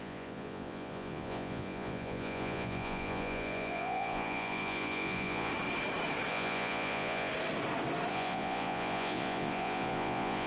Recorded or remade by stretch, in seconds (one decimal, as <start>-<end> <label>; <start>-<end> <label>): 0.0-5.5 remade; 5.5-6.3 recorded; 6.3-7.3 remade; 7.3-8.1 recorded; 8.1-10.5 remade